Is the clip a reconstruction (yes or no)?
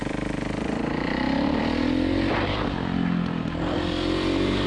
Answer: yes